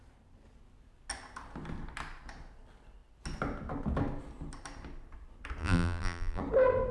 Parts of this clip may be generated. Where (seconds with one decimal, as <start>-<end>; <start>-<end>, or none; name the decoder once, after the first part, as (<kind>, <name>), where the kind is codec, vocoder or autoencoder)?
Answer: 5.6-6.4 (vocoder, BigVGAN v2)